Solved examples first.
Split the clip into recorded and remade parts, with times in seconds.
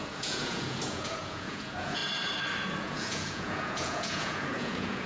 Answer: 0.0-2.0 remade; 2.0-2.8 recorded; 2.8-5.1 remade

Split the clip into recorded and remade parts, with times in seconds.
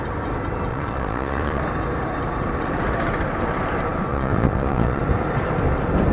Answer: 0.0-0.7 recorded; 0.7-1.6 remade; 1.6-4.1 recorded; 4.1-5.0 remade; 5.0-6.1 recorded